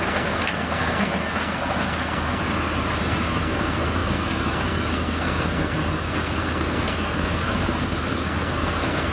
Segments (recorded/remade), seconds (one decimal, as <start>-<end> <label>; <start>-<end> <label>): 0.0-2.4 remade; 2.4-3.0 recorded; 3.0-9.1 remade